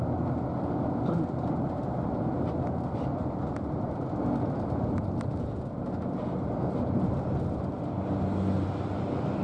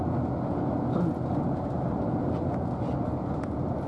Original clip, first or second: second